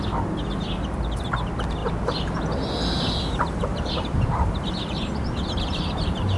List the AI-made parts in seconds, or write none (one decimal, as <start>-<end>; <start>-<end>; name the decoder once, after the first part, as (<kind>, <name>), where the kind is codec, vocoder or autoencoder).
3.7-6.4 (vocoder, BigVGAN v2)